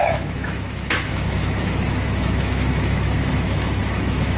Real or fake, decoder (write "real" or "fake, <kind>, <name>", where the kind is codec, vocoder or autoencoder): fake, autoencoder, DAC-VAE